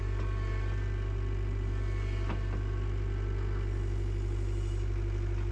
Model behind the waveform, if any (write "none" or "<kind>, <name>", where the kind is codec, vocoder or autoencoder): none